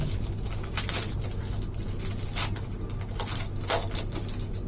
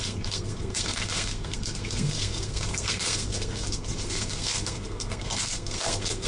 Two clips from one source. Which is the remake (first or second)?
second